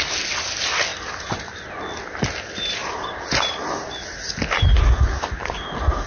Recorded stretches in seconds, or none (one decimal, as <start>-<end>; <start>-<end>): 0.0-6.1